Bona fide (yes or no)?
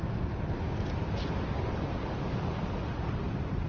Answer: yes